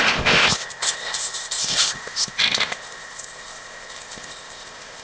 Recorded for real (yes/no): no